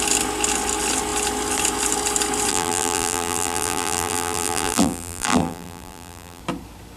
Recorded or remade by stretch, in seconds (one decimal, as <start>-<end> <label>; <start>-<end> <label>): 0.0-2.5 recorded; 2.5-6.4 remade; 6.4-7.0 recorded